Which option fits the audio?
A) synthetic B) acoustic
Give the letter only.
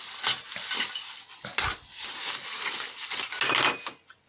B